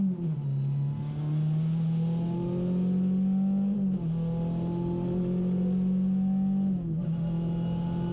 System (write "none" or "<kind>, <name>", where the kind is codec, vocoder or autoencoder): none